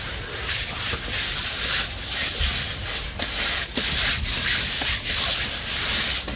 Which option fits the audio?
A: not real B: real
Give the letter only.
B